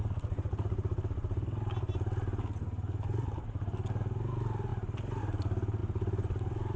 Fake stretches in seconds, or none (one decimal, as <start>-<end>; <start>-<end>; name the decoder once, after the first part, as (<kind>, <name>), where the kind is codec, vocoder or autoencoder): none